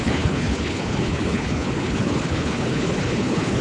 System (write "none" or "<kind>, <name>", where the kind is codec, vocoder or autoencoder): codec, HILCodec